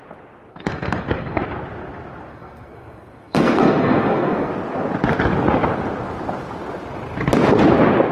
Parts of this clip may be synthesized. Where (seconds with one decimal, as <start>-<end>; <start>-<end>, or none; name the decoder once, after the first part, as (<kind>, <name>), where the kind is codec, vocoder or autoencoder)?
0.5-1.4 (codec, SNAC); 2.3-4.5